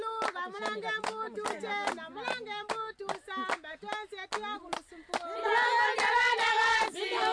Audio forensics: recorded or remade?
recorded